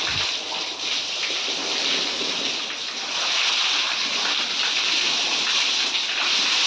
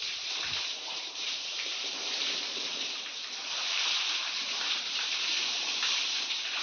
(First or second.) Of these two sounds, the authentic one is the first